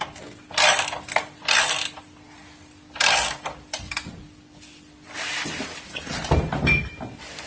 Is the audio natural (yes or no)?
no